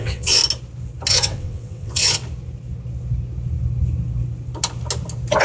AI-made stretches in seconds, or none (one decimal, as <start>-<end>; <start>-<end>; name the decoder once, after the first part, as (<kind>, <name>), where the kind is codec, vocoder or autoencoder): 0.0-0.4 (vocoder, WaveNeXt); 1.1-2.2